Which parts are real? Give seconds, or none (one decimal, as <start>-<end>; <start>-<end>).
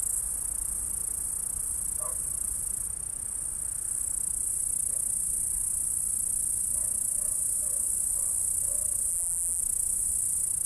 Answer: 0.0-9.1; 9.6-10.7